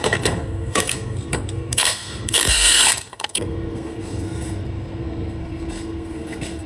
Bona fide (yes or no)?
no